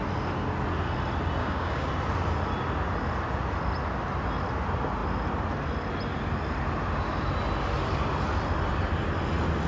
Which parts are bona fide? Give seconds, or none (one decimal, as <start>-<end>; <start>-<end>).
0.0-1.4; 1.9-9.7